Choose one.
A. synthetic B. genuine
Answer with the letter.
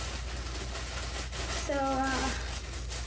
B